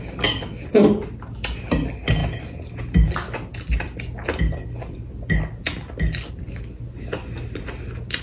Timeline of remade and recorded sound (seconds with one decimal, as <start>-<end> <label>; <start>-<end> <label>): 0.0-8.2 recorded